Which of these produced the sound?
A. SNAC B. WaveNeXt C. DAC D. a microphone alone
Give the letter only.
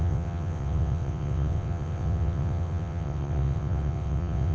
B